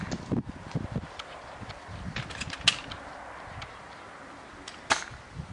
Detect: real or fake real